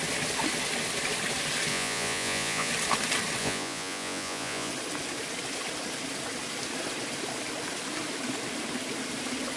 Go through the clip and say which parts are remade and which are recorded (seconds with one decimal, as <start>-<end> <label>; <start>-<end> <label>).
0.0-1.7 recorded; 1.7-2.7 remade; 2.7-3.4 recorded; 3.4-4.7 remade; 4.7-9.6 recorded